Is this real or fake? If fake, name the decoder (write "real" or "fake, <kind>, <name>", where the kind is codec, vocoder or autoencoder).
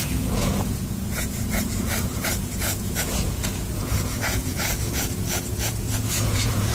fake, vocoder, Vocos